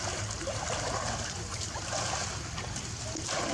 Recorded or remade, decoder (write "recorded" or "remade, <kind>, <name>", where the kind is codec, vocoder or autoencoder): recorded